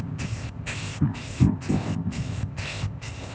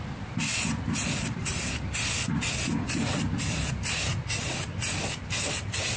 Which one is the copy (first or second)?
first